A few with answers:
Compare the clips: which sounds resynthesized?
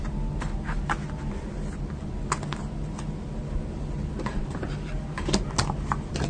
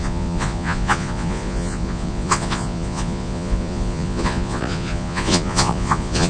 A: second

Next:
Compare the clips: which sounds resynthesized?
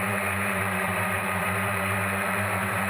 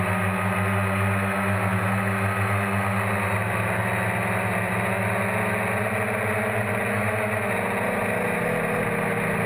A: first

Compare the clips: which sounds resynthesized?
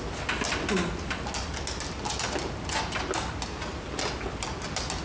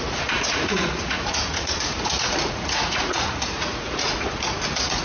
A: second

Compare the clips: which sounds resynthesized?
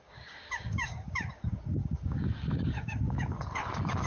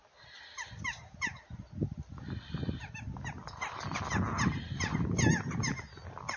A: first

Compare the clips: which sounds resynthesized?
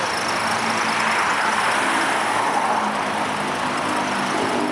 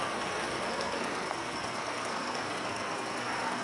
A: second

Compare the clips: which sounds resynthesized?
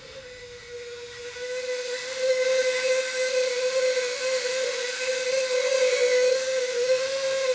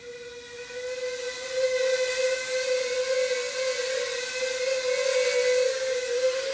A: first